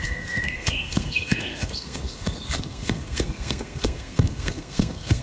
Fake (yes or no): yes